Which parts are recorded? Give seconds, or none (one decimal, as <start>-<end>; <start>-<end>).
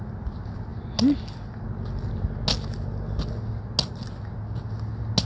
0.0-5.2